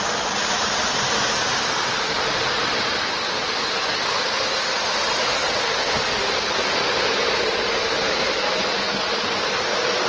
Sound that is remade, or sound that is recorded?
recorded